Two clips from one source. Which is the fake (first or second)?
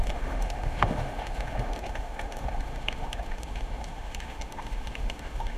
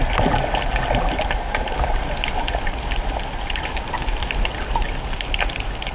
first